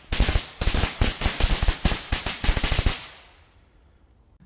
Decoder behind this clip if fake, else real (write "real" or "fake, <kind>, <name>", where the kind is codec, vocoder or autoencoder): real